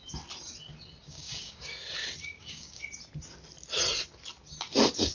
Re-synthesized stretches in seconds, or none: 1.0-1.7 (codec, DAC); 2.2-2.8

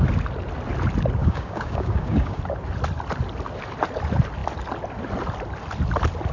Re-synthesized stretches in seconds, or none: 1.2-2.4 (codec, DAC)

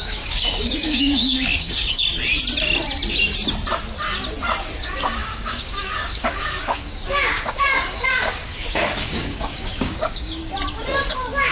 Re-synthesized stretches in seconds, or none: 0.0-2.0 (codec, DAC); 4.8-10.4; 11.1-11.5

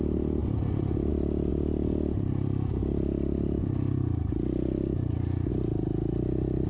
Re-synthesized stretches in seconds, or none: none

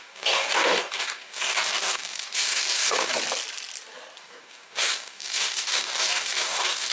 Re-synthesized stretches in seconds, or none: 0.0-3.1 (codec, DAC); 4.2-6.9

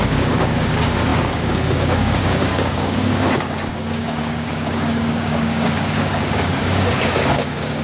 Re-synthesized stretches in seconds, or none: 0.0-7.8 (codec, DAC)

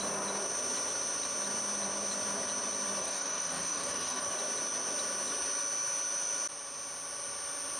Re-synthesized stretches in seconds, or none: 3.0-4.3 (codec, DAC)

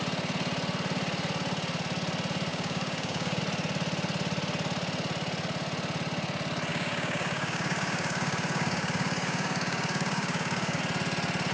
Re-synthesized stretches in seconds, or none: 2.5-3.4 (codec, DAC); 6.7-10.8